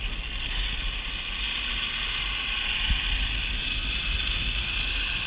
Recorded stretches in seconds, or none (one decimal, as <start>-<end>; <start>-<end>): 0.0-5.3